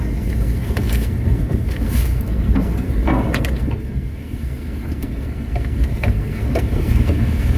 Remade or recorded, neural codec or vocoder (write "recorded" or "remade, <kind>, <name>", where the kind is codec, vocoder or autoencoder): remade, codec, SNAC